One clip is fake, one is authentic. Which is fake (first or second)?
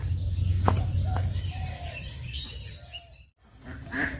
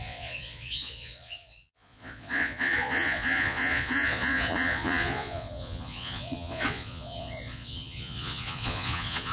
second